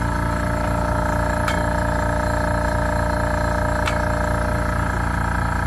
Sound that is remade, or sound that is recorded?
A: recorded